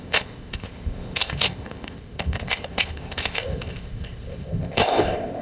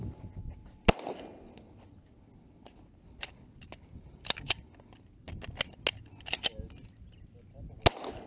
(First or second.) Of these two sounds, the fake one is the first